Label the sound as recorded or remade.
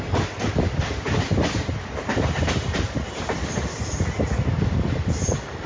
recorded